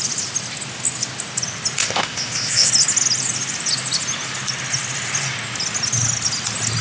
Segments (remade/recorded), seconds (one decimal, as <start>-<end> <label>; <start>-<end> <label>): 0.0-1.8 recorded; 1.8-2.7 remade; 2.7-6.8 recorded